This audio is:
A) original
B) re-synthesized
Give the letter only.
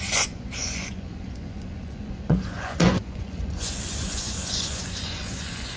B